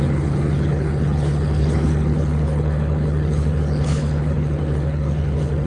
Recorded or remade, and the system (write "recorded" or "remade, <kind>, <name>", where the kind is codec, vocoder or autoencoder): remade, codec, HILCodec